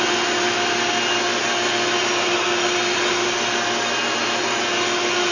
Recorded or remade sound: recorded